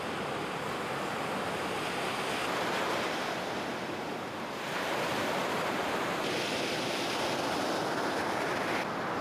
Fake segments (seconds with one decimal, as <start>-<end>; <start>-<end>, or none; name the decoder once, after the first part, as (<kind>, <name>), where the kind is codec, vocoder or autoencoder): none